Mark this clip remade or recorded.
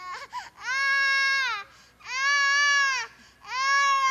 recorded